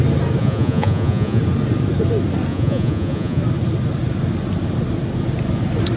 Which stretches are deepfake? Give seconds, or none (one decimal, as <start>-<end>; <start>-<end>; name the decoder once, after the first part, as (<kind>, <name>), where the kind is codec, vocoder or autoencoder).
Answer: 0.4-1.4 (vocoder, Vocos); 2.5-3.4